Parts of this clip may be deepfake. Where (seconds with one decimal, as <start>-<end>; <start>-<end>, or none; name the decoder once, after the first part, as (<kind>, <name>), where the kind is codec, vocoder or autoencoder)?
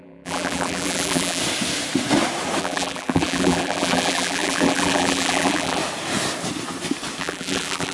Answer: 0.0-1.4 (vocoder, BigVGAN v2); 2.6-5.8; 7.2-7.9